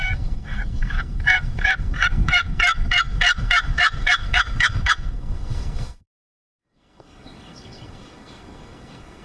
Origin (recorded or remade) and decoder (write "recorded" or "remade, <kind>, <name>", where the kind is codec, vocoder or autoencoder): remade, codec, SNAC